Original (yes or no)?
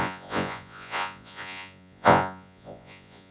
no